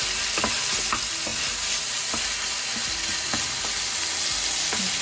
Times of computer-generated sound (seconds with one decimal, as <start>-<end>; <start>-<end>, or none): none